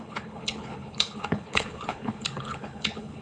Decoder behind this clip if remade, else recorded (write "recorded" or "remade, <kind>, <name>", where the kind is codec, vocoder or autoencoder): remade, codec, HILCodec